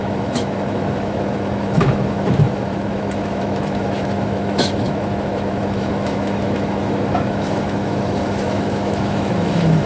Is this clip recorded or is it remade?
remade